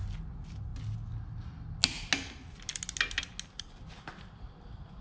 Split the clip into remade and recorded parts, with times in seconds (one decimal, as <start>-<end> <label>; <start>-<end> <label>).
0.0-5.0 recorded